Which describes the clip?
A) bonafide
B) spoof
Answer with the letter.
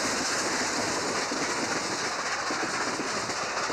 A